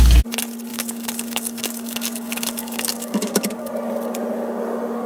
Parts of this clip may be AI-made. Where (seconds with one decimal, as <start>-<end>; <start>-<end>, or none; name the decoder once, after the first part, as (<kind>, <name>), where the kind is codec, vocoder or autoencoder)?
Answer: 0.7-3.7 (codec, DAC)